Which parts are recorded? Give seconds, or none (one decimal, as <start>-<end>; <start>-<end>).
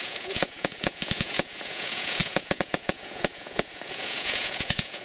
none